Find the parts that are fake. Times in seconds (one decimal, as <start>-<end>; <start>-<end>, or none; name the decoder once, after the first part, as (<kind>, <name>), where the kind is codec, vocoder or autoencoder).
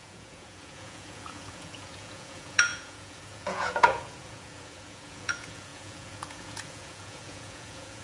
0.0-8.0 (vocoder, Vocos)